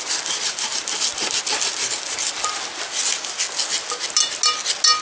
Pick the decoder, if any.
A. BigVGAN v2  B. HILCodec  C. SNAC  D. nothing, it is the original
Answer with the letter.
D